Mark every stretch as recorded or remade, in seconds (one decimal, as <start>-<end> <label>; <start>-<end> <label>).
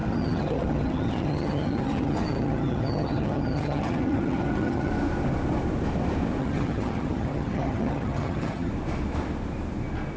0.0-4.9 remade; 4.9-6.4 recorded; 6.4-8.7 remade; 8.7-10.2 recorded